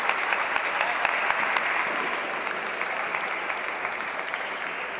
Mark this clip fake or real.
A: real